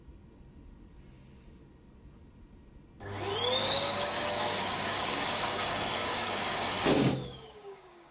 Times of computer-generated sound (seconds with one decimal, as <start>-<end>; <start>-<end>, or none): 3.6-8.1